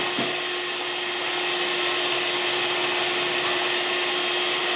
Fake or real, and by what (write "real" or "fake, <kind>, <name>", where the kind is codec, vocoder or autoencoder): real